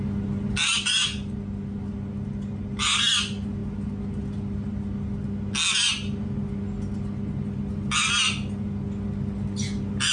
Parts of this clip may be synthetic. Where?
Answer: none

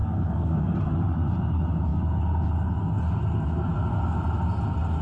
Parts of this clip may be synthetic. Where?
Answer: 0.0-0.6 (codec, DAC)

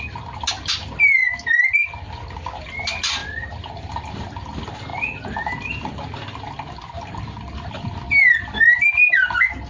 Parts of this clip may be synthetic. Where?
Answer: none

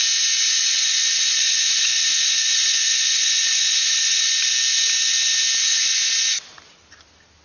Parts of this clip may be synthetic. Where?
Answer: 0.4-4.3 (vocoder, Vocos); 5.6-6.1